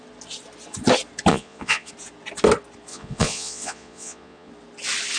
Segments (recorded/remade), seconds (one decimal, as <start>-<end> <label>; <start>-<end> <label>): 0.0-1.3 recorded; 1.3-1.9 remade; 1.9-2.9 recorded; 2.9-4.5 remade; 4.5-5.2 recorded

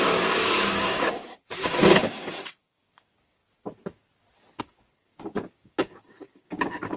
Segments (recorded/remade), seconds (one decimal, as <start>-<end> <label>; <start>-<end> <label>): 0.0-3.4 remade; 3.4-4.6 recorded; 4.6-7.0 remade